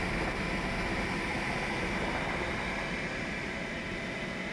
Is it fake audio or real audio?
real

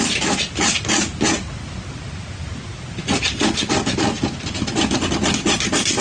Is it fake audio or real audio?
real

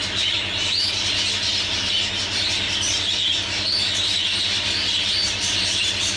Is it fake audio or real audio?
real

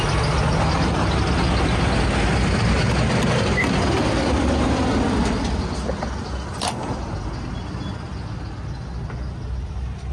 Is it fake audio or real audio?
real